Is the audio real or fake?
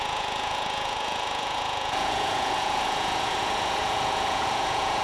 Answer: fake